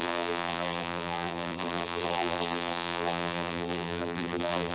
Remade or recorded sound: remade